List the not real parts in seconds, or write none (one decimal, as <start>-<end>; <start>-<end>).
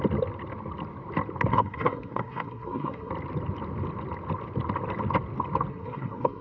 1.5-3.1; 5.7-6.4